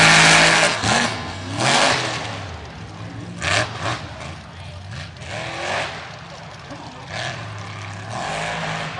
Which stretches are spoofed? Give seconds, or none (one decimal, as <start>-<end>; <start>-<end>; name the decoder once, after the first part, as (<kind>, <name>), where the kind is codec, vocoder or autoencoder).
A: 0.5-1.9 (codec, SNAC)